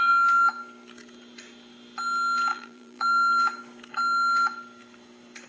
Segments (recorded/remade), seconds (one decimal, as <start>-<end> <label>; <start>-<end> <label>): 0.0-2.5 recorded; 2.5-3.4 remade; 3.4-5.5 recorded